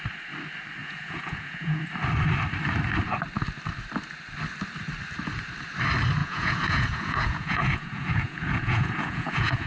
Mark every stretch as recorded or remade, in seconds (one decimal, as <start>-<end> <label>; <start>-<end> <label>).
0.0-0.8 recorded; 0.8-1.8 remade; 1.8-6.2 recorded; 6.2-9.7 remade